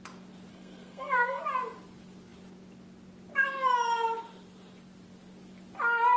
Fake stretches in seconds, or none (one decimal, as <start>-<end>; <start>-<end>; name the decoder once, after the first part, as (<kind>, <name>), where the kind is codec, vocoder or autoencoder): 0.5-1.4 (codec, SNAC)